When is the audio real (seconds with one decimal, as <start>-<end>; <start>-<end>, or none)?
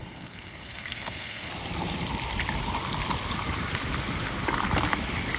1.5-5.4